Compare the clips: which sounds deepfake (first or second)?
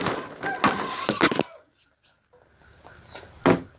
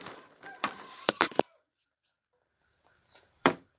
second